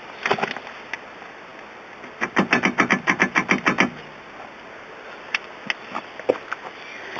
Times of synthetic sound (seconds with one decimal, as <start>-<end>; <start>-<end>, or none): none